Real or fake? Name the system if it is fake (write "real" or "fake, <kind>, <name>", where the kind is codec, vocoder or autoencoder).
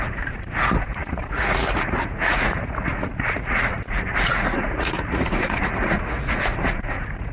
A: fake, vocoder, Vocos